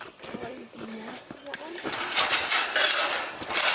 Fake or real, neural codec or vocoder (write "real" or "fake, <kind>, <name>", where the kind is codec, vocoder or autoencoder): real